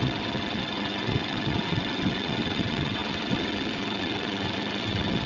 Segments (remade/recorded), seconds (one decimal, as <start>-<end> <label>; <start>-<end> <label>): 0.0-5.3 remade